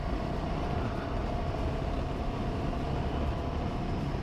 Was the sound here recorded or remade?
recorded